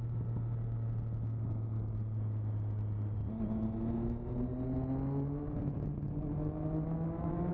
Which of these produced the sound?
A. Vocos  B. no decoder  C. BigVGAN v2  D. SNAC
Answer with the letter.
B